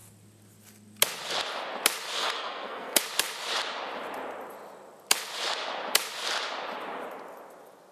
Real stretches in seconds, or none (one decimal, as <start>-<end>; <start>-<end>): 0.0-2.2; 3.0-7.9